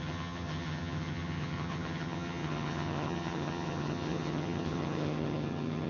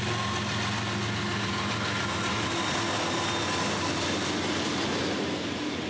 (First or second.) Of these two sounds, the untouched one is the second